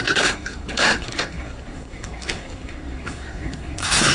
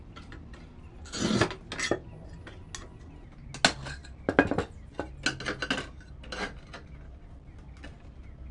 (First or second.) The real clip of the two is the second